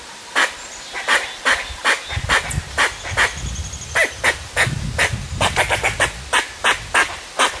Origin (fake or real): real